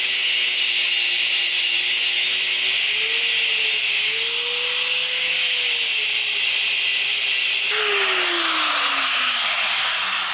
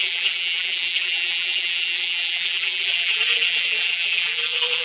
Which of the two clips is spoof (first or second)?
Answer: second